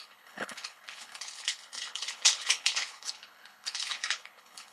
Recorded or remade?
remade